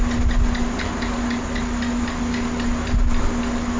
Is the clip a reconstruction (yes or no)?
no